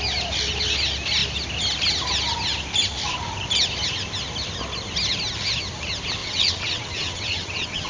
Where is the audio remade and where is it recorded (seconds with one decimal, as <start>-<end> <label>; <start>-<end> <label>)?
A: 0.0-6.2 recorded; 6.2-7.9 remade